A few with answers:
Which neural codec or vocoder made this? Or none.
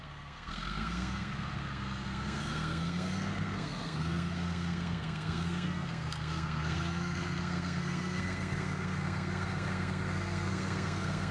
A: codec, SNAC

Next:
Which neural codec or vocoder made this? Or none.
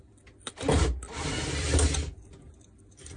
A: none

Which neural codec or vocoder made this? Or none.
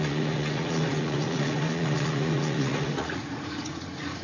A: vocoder, Vocos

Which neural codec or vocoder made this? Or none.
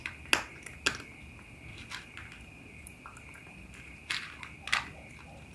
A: none